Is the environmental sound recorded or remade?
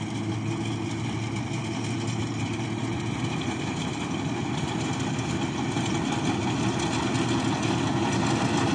recorded